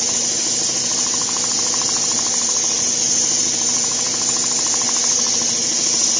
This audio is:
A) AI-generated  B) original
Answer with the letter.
B